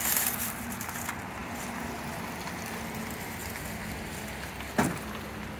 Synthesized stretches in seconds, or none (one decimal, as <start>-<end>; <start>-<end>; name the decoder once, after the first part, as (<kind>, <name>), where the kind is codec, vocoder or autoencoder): none